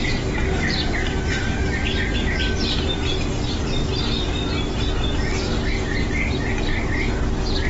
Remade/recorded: recorded